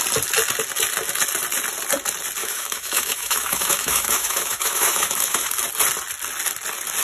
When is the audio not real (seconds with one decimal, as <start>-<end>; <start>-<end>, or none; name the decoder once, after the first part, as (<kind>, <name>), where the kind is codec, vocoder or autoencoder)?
2.4-5.5 (autoencoder, DAC-VAE)